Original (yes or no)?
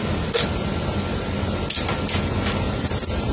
yes